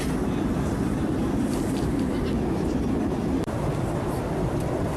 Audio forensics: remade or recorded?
remade